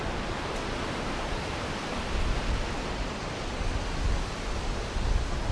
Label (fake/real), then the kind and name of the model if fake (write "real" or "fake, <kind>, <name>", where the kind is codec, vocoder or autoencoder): real